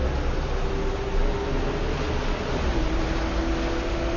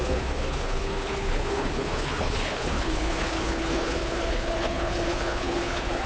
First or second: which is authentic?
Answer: first